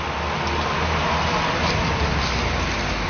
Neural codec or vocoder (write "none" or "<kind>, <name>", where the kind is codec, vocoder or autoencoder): none